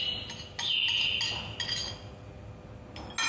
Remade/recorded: recorded